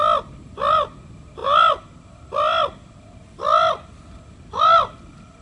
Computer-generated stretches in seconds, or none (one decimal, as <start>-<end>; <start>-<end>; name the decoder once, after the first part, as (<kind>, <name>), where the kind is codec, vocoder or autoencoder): none